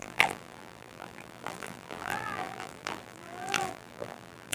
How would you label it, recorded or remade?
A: remade